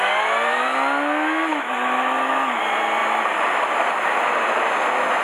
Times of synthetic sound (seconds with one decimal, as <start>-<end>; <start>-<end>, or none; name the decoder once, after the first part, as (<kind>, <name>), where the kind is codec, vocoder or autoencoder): 1.5-2.6 (autoencoder, DAC-VAE)